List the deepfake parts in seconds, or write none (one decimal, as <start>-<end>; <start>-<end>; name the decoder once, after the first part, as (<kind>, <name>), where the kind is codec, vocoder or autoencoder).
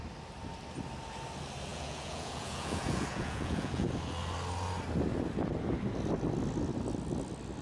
1.7-3.9 (vocoder, Vocos)